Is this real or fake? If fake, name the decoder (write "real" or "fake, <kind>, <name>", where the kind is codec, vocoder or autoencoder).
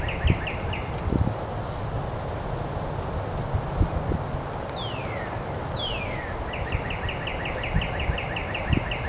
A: real